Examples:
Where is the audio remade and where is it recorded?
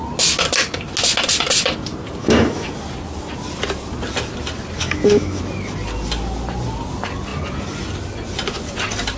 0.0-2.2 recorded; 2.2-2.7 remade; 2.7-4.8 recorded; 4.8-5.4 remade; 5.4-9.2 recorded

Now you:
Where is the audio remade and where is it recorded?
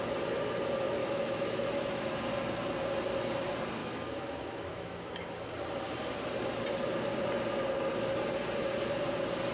0.0-1.0 recorded; 1.0-2.2 remade; 2.2-3.8 recorded; 3.8-5.1 remade; 5.1-9.5 recorded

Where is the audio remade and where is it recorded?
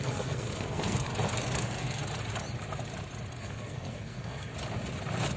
0.0-1.1 remade; 1.1-1.6 recorded; 1.6-2.0 remade; 2.0-3.4 recorded; 3.4-4.5 remade; 4.5-5.4 recorded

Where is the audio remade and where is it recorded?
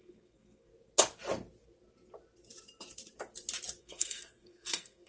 0.0-0.7 remade; 0.7-3.8 recorded; 3.8-5.1 remade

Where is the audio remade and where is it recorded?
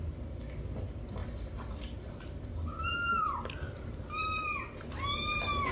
0.0-5.7 recorded